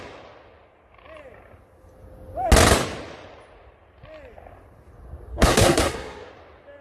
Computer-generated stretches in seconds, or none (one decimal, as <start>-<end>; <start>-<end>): 5.3-6.3

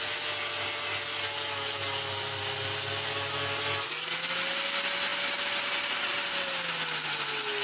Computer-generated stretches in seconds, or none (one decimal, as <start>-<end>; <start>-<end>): none

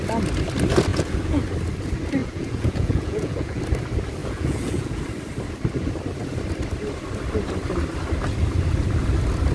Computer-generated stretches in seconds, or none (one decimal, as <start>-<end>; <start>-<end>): 0.9-1.4; 2.2-3.6; 4.2-5.0

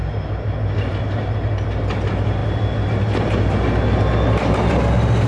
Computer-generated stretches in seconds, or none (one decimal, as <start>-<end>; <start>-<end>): none

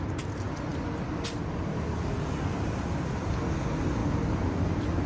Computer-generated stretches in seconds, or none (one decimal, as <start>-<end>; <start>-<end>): none

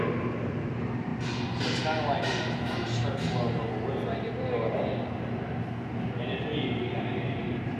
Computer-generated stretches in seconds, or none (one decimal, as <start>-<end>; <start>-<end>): none

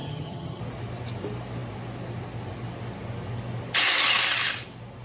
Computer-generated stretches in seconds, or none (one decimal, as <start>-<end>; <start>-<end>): 0.0-0.6

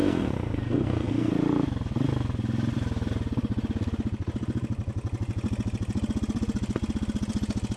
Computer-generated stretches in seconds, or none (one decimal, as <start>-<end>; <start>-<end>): 0.0-1.3